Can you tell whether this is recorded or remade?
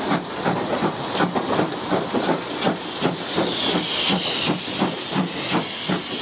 recorded